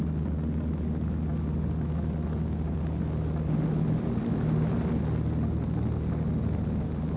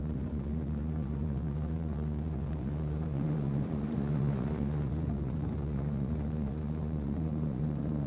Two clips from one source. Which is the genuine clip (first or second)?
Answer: first